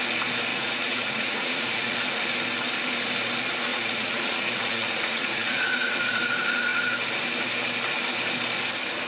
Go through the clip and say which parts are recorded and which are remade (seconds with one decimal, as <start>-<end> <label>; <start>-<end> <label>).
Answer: 0.0-0.5 recorded; 0.5-2.2 remade; 2.2-3.7 recorded; 3.7-6.2 remade; 6.2-9.1 recorded